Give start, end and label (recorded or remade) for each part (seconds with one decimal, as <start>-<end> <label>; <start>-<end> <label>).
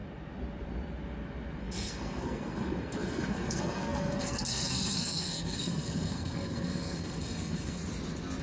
0.0-1.6 recorded; 1.6-7.8 remade; 7.8-8.4 recorded